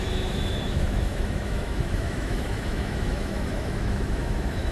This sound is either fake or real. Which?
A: fake